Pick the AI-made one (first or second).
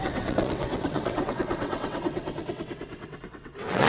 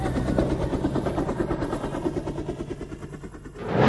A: first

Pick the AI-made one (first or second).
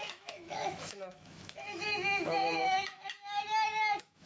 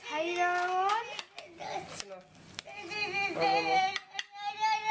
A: first